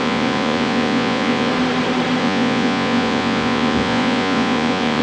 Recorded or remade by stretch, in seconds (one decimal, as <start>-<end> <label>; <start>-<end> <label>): 0.0-1.5 remade; 1.5-2.2 recorded; 2.2-5.0 remade